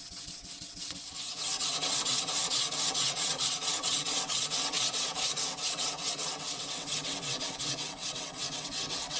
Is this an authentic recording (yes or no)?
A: no